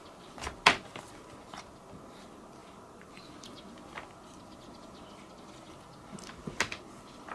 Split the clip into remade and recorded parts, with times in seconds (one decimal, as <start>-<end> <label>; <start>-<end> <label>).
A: 0.0-7.3 recorded